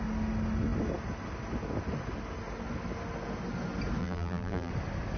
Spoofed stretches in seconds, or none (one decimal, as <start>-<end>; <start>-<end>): 4.0-4.7